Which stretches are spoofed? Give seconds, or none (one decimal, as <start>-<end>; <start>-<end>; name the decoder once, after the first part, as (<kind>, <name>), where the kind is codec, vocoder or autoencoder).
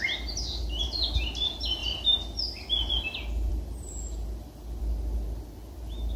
1.8-2.9 (vocoder, BigVGAN v2); 3.5-4.8